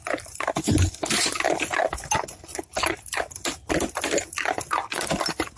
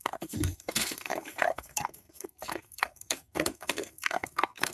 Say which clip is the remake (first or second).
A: second